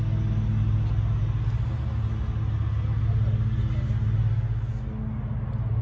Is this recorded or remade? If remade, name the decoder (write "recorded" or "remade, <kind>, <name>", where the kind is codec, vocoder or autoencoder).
recorded